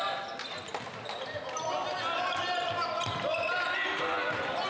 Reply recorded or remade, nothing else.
recorded